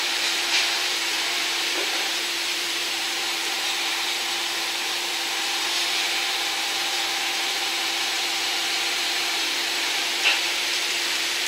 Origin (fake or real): fake